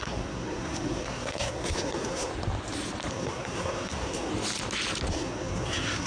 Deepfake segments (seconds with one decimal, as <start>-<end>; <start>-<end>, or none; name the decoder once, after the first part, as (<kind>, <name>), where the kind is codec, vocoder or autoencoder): 0.0-2.3 (codec, SNAC); 3.1-4.3; 5.1-6.1